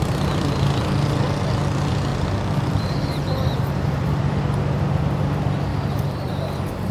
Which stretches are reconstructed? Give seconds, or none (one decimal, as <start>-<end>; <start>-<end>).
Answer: 2.1-4.2; 5.7-6.3

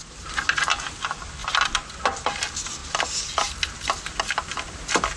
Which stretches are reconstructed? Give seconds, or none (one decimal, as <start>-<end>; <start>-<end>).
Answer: none

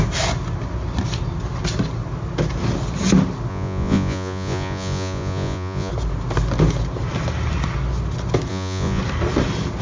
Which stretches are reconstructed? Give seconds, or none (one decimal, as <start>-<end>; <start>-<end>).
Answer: 3.5-5.9; 8.5-9.0

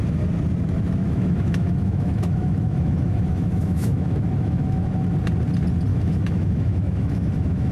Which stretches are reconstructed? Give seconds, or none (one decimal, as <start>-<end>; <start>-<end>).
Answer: 1.0-4.9; 5.9-7.7

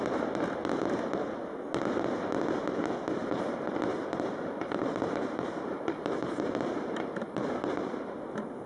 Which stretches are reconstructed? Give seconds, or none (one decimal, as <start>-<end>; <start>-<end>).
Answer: 3.2-8.1

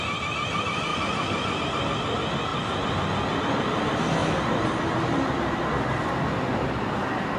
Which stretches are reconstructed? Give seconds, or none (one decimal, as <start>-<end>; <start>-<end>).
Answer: 0.9-1.6